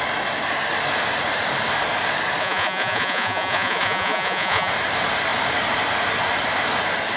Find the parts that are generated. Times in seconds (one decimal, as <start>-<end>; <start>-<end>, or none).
2.4-4.7